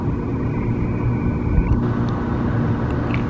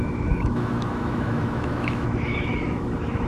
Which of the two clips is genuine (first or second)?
first